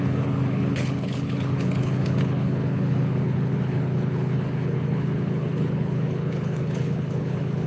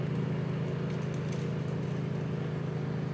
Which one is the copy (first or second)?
first